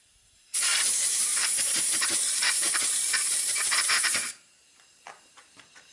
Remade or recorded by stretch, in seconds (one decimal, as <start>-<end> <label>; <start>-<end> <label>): 0.0-5.9 remade